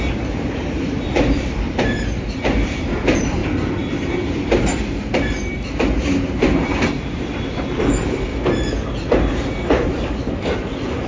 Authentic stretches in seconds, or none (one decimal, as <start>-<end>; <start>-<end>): 8.3-9.6